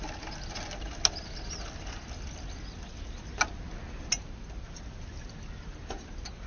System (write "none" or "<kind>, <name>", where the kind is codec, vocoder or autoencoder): none